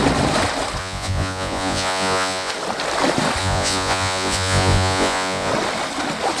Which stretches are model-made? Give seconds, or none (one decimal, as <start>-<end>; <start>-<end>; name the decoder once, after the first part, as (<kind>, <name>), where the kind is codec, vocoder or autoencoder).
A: 0.8-2.5 (vocoder, Vocos); 3.4-5.5